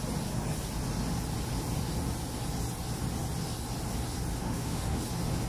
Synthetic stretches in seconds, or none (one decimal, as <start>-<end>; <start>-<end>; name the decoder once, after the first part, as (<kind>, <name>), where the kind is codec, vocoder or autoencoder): 4.4-5.0 (autoencoder, DAC-VAE)